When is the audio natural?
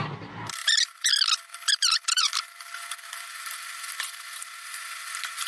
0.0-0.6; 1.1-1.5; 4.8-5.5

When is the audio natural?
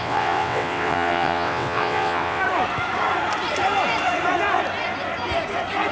2.4-5.9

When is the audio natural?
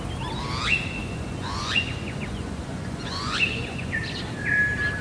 0.0-1.0; 4.0-5.0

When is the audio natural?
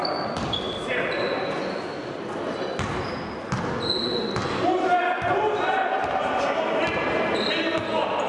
0.0-8.3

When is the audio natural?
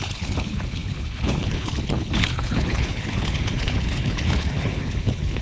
none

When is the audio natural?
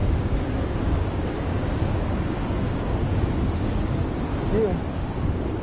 4.3-4.9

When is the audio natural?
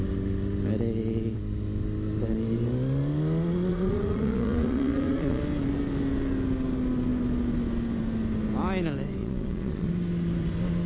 0.0-3.7; 5.4-9.2; 9.9-10.9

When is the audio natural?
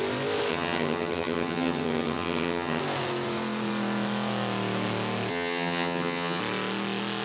0.0-0.5; 2.8-5.3; 6.4-7.2